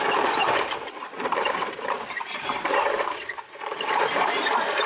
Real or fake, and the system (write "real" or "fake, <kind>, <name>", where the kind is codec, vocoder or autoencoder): fake, vocoder, BigVGAN v2